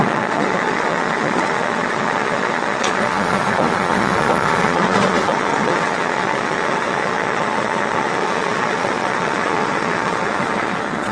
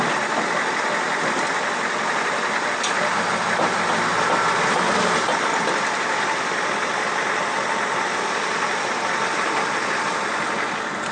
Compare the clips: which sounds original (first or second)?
second